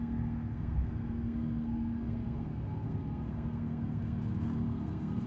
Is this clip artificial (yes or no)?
yes